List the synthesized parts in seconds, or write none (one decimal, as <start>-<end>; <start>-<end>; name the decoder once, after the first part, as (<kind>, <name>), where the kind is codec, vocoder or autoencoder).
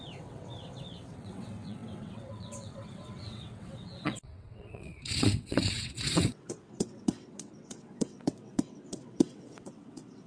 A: 0.0-10.3 (vocoder, WaveNeXt)